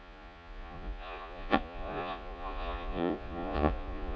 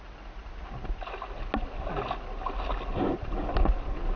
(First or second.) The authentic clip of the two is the second